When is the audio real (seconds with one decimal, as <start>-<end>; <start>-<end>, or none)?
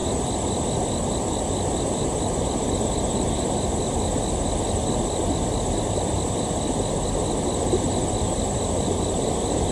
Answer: 0.0-9.7